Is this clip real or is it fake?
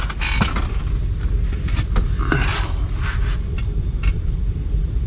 fake